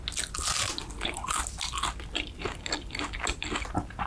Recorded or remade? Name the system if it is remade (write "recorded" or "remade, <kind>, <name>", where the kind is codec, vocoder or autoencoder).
recorded